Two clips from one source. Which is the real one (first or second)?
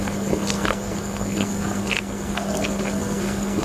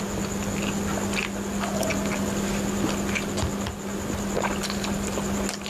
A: second